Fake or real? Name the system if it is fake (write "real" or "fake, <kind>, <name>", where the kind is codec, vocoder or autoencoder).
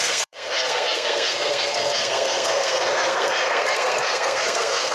fake, codec, SNAC